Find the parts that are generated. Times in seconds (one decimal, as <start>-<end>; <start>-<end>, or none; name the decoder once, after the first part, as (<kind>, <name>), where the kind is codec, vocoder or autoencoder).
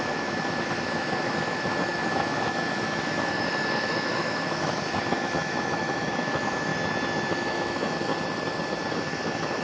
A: 0.0-6.7 (autoencoder, DAC-VAE); 7.3-8.1; 8.9-9.6